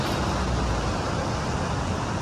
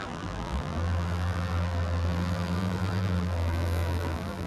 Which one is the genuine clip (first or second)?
first